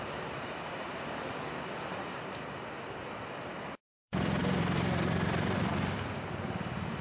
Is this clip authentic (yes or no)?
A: no